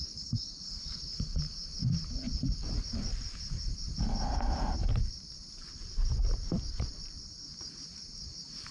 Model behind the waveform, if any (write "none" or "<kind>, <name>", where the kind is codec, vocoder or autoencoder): vocoder, BigVGAN v2